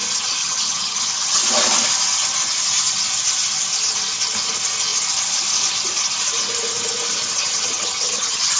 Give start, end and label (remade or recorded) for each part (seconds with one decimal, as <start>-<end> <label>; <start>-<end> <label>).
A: 0.0-0.4 recorded; 0.4-1.4 remade; 1.4-7.4 recorded; 7.4-8.6 remade